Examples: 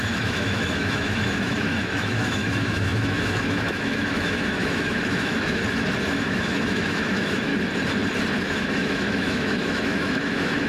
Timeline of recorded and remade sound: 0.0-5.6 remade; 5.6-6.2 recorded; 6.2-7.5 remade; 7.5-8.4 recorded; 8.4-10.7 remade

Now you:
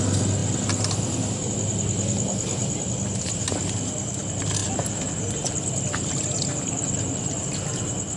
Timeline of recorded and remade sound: 0.0-8.2 recorded